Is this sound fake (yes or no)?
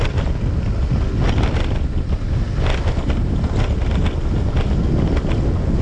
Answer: no